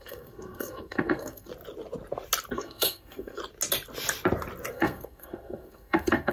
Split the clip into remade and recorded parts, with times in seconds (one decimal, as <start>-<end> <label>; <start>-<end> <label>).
0.0-1.5 remade; 1.5-2.5 recorded; 2.5-3.4 remade; 3.4-4.7 recorded; 4.7-6.3 remade